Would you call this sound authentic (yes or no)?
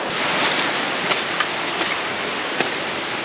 yes